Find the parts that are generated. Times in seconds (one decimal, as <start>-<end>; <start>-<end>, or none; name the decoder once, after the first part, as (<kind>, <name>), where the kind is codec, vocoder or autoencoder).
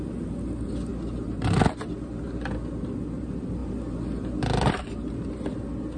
none